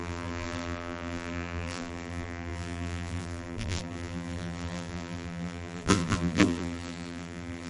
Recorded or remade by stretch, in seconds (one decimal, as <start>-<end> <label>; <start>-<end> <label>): 0.0-7.7 remade